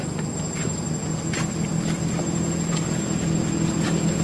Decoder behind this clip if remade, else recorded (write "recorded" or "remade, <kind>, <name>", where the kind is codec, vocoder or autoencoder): recorded